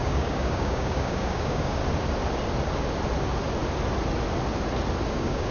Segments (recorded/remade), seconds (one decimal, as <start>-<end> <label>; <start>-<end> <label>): 0.0-1.8 remade; 1.8-5.1 recorded; 5.1-5.5 remade